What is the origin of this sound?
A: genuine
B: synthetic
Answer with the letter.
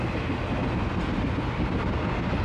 A